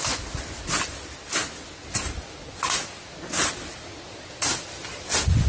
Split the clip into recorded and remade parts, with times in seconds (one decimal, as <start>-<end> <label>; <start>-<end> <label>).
0.0-5.5 recorded

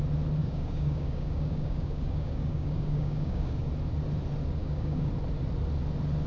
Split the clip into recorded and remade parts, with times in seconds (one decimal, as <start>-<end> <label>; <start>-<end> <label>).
0.0-0.4 recorded; 0.4-3.7 remade; 3.7-4.6 recorded; 4.6-5.1 remade; 5.1-6.3 recorded